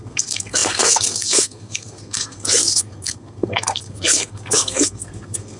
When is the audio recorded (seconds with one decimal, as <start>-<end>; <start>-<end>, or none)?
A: none